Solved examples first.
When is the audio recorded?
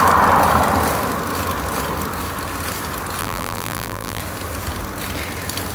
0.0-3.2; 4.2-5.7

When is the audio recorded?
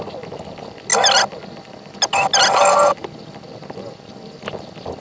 0.0-5.0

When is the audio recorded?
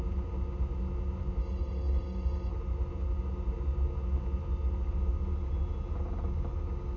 0.0-1.4; 2.5-7.0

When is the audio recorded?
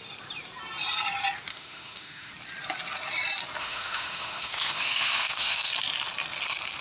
0.0-1.5; 2.3-3.6; 5.7-6.8